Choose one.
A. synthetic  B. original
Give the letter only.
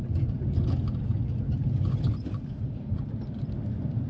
A